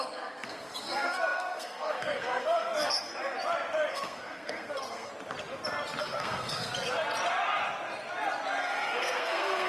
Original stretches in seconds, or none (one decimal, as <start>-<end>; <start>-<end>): 3.1-3.9; 5.1-6.0; 6.7-8.6